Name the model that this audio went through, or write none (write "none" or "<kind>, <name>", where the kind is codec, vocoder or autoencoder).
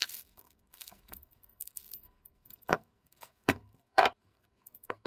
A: codec, SNAC